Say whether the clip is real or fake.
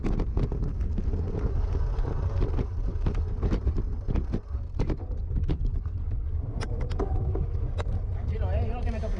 real